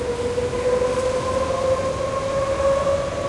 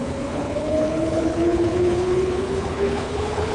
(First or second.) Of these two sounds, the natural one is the first